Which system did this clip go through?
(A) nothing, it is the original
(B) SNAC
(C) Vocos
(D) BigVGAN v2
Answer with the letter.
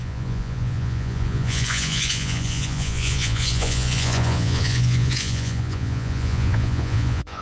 C